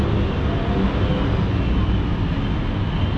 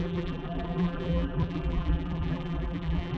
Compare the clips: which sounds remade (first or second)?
second